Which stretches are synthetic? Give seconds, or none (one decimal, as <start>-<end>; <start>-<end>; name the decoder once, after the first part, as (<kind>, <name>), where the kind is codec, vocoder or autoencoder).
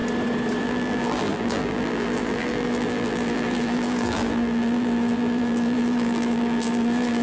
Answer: 0.6-7.2 (vocoder, BigVGAN v2)